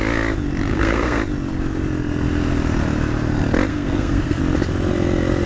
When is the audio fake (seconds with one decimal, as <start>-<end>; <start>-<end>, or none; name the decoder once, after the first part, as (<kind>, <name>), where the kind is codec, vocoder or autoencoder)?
0.7-1.2 (codec, SNAC); 3.7-4.4